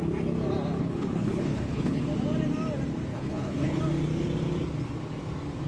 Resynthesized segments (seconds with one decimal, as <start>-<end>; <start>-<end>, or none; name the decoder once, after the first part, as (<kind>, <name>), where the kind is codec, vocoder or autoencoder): 0.8-2.0 (codec, HILCodec); 3.1-3.8